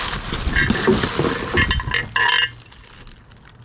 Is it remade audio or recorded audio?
recorded